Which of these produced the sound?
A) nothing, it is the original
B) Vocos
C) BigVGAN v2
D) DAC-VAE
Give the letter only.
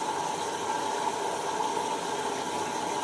A